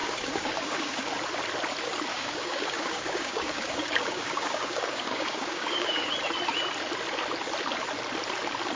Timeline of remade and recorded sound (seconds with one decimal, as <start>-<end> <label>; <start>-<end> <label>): 0.0-1.1 remade; 1.1-2.1 recorded; 2.1-6.1 remade; 6.1-8.8 recorded